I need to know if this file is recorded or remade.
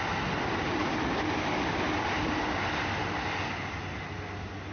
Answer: recorded